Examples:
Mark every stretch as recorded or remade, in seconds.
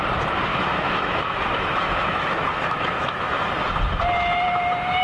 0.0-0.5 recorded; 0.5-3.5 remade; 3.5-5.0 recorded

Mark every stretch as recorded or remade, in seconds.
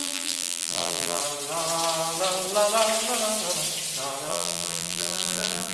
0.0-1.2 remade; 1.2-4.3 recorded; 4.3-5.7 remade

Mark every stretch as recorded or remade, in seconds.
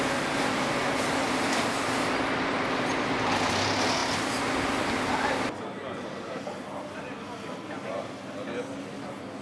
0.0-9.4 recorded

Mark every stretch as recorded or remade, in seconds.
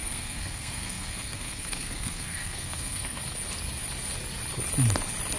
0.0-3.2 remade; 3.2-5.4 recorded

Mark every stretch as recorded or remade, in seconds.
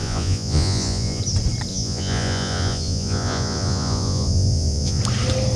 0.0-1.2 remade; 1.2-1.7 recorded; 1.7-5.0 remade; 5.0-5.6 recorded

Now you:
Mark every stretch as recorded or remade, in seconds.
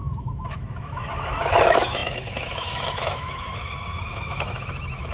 0.0-5.1 remade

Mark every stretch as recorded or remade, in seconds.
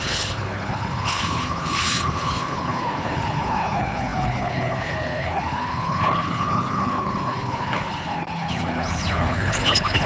0.0-10.1 remade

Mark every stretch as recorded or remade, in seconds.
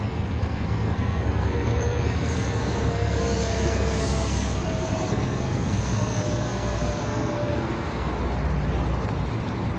0.0-8.1 remade; 8.1-9.8 recorded